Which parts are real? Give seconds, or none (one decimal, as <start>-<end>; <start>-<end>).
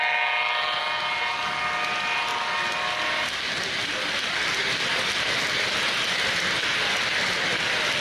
0.0-8.0